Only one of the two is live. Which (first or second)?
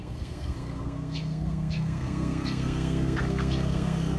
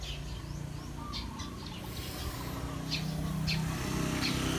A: second